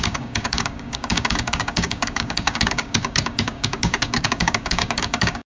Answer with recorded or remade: remade